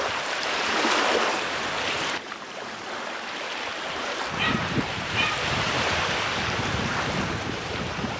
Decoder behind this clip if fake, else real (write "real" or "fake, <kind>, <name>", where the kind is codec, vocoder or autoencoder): fake, vocoder, BigVGAN v2